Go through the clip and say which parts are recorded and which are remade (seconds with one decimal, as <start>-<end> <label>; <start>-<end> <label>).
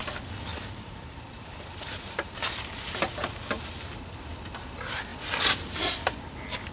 0.0-0.5 recorded; 0.5-2.6 remade; 2.6-6.7 recorded